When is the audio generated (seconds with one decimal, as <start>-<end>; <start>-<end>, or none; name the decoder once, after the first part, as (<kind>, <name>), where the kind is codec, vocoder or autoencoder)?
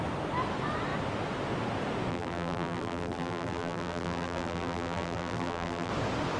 2.1-5.9 (vocoder, BigVGAN v2)